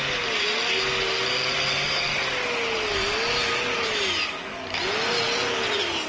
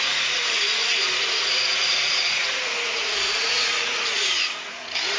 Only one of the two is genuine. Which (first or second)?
first